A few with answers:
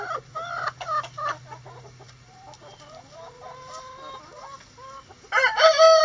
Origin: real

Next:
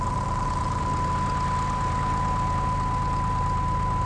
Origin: real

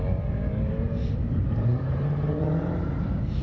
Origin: fake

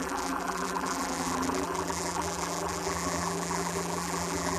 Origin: fake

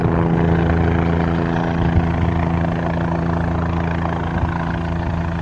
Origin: real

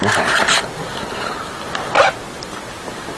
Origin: real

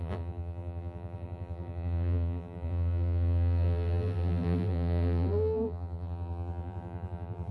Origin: fake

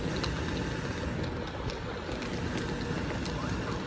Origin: real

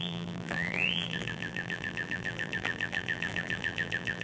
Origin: fake